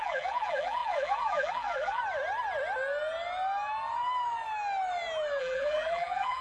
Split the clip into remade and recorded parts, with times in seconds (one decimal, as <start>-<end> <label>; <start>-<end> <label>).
0.0-2.0 remade; 2.0-5.4 recorded; 5.4-6.4 remade